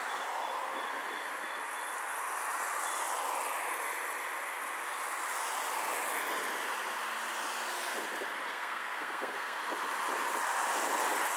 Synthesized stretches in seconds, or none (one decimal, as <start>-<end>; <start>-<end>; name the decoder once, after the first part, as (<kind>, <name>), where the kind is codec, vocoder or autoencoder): 8.5-9.6 (codec, SNAC)